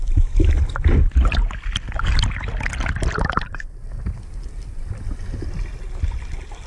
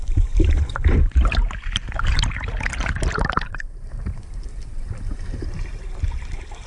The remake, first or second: second